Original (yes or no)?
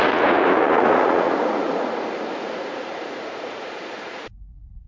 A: no